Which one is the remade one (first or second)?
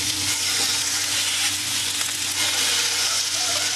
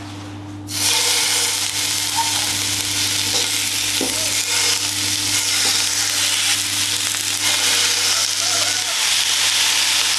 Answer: first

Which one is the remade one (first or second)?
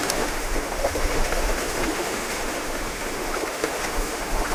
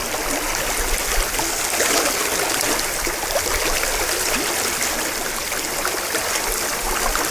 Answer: first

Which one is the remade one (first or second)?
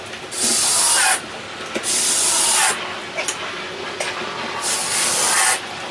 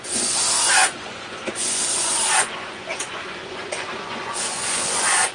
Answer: second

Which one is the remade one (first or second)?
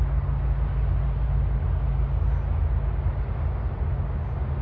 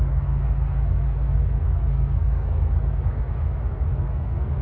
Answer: second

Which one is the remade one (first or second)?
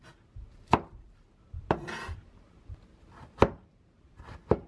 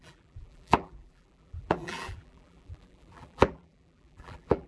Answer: second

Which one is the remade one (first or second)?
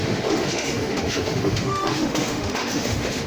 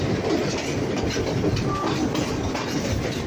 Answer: first